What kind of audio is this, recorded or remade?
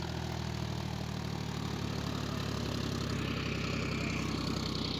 recorded